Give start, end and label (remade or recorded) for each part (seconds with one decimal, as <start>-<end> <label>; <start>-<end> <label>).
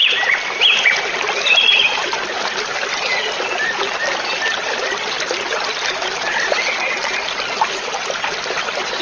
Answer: 0.0-9.0 recorded